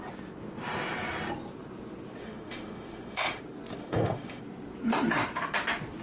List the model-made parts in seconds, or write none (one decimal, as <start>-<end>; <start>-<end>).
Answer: 2.2-3.4; 3.8-4.4